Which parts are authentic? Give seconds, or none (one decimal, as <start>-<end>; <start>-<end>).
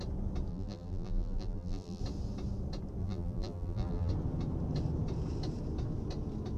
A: 0.0-0.5; 2.0-3.0; 4.1-6.6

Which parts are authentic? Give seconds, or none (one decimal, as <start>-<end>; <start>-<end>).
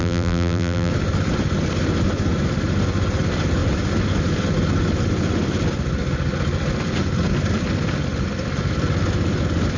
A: 0.9-9.8